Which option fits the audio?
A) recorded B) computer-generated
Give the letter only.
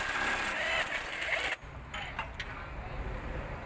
A